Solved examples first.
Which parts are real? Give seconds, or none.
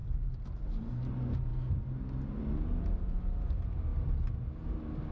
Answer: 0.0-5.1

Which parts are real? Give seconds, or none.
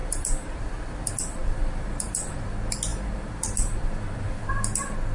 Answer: 0.6-1.4; 2.5-2.9; 4.5-5.1